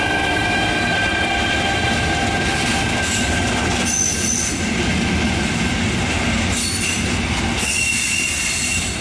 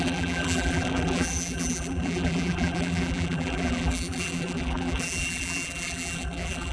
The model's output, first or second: second